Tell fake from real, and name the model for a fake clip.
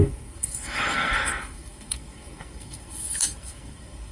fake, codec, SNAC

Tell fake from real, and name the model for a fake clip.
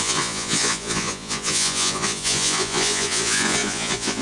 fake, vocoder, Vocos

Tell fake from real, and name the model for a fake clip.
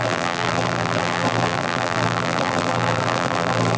fake, vocoder, BigVGAN v2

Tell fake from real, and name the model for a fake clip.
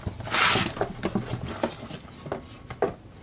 real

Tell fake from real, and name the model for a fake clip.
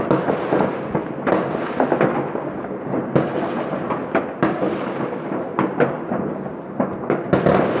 real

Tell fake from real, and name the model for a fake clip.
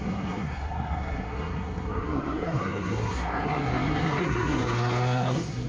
fake, codec, SNAC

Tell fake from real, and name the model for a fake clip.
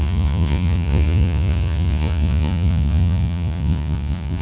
fake, vocoder, Vocos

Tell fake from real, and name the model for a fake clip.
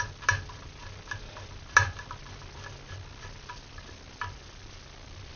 real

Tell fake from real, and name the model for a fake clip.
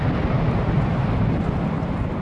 real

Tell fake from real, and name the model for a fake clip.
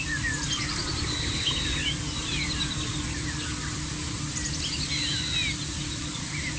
real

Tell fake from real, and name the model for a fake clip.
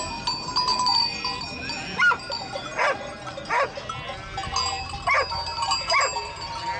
real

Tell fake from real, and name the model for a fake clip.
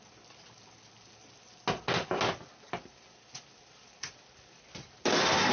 real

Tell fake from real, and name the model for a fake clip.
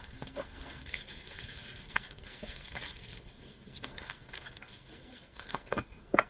fake, codec, SNAC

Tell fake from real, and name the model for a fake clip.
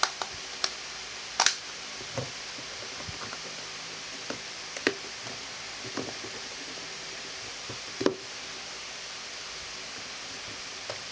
fake, vocoder, BigVGAN v2